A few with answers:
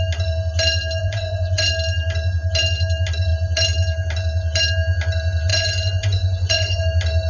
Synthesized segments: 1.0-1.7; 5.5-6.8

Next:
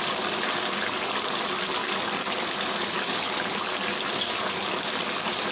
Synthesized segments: none

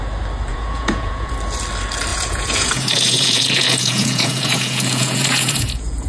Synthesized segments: 0.5-1.3; 2.1-6.1